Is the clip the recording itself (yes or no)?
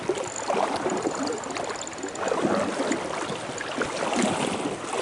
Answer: yes